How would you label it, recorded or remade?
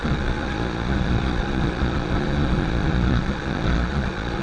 remade